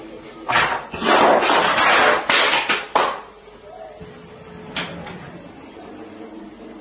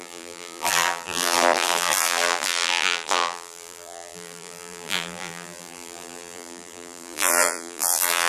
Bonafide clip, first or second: first